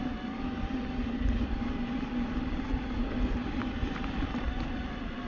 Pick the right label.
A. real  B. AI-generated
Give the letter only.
A